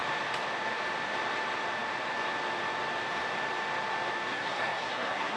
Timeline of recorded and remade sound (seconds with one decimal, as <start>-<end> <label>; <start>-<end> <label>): 0.0-4.3 recorded; 4.3-5.4 remade